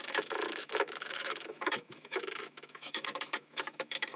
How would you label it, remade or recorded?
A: remade